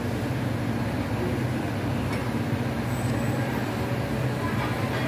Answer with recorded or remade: recorded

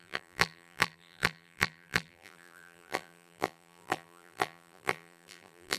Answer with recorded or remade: remade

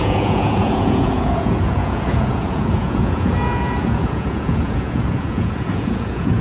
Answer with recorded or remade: remade